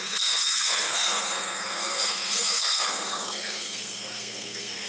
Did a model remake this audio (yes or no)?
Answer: yes